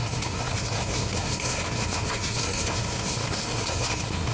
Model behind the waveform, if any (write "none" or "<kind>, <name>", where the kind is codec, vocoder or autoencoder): codec, SNAC